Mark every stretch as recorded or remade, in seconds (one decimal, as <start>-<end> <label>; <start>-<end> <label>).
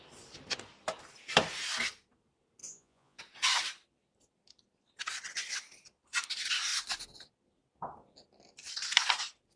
0.0-2.6 recorded; 2.6-3.2 remade; 3.2-9.6 recorded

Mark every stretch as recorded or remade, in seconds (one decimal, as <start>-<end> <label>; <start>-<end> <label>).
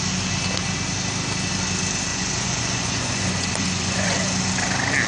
0.0-2.1 recorded; 2.1-4.2 remade; 4.2-5.1 recorded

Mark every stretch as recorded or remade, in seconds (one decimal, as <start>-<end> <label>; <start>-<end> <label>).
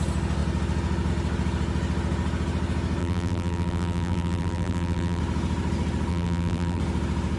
0.0-3.0 recorded; 3.0-5.2 remade; 5.2-6.1 recorded; 6.1-6.8 remade; 6.8-7.4 recorded